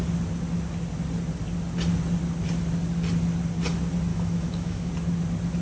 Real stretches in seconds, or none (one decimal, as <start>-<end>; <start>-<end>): 0.0-4.1; 4.9-5.6